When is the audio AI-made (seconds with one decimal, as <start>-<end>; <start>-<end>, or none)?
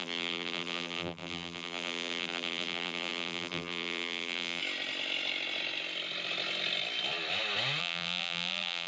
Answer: 0.0-4.6; 7.8-8.9